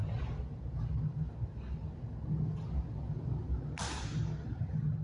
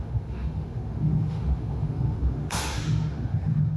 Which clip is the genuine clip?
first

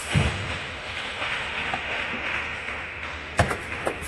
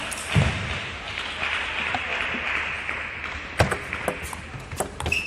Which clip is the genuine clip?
second